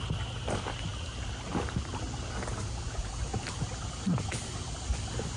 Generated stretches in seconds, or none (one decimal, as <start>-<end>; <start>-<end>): none